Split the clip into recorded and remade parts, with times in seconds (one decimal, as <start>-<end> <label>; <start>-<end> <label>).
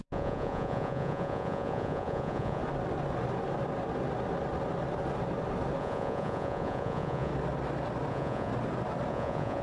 0.0-2.6 remade; 2.6-5.8 recorded; 5.8-7.3 remade; 7.3-8.1 recorded; 8.1-8.5 remade; 8.5-9.1 recorded; 9.1-9.6 remade